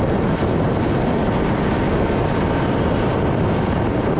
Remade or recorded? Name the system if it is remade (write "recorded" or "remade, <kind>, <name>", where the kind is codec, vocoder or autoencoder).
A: recorded